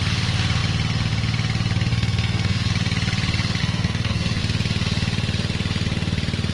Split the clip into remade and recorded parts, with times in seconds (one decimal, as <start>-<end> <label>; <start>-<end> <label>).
0.0-1.9 recorded; 1.9-2.7 remade; 2.7-3.6 recorded; 3.6-4.4 remade; 4.4-6.5 recorded